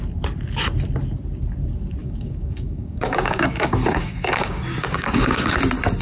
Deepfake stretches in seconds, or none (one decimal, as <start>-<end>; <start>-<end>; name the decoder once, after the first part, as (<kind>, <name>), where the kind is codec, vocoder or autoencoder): 2.0-5.6 (codec, DAC)